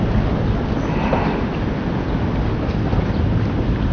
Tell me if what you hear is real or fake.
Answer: real